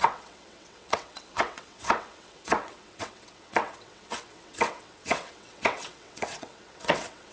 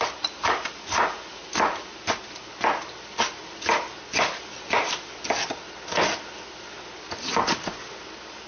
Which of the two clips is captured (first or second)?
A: second